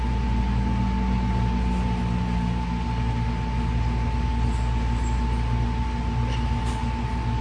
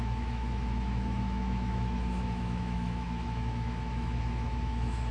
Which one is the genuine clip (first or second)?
first